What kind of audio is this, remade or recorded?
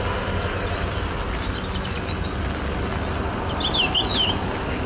recorded